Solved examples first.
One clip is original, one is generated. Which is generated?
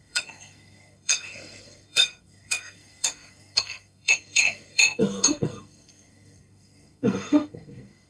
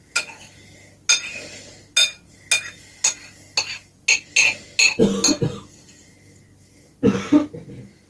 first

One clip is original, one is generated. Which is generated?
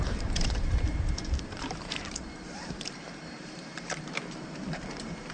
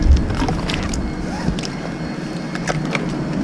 first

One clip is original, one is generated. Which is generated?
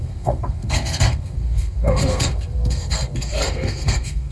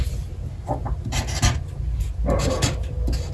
first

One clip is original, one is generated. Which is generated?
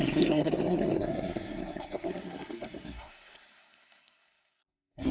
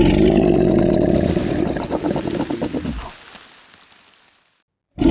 first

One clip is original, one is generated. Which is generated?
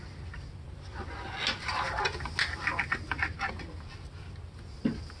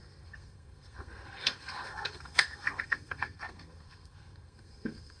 second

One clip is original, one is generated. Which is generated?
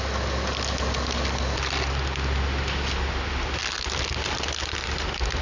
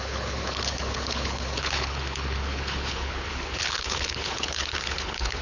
second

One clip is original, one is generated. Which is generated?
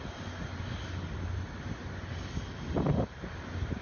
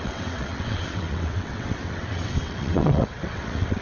second